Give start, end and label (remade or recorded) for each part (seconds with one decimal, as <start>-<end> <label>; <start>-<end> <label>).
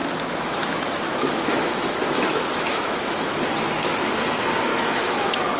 0.0-3.4 remade; 3.4-4.7 recorded; 4.7-5.6 remade